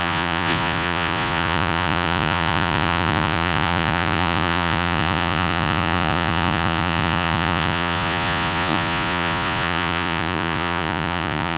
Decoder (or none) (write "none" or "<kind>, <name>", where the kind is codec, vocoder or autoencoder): vocoder, Vocos